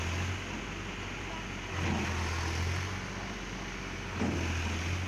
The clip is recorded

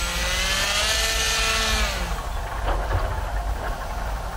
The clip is recorded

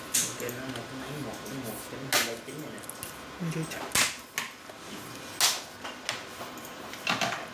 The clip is recorded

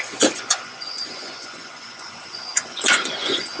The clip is remade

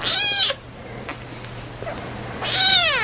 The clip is recorded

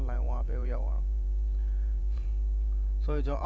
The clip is remade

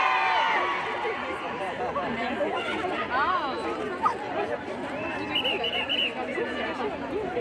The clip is recorded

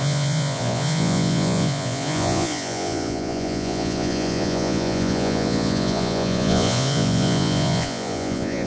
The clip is remade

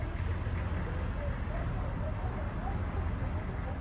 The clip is recorded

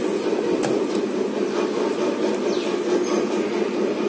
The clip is recorded